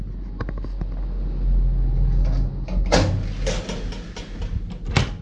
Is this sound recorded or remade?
recorded